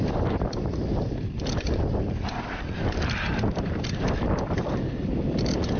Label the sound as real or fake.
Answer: fake